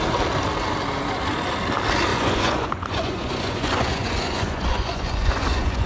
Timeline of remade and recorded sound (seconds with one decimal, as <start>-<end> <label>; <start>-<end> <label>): 0.0-2.1 recorded; 2.1-5.9 remade